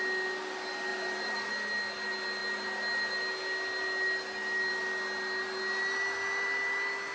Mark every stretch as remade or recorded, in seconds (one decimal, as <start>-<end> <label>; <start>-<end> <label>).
0.0-0.9 recorded; 0.9-1.5 remade; 1.5-7.1 recorded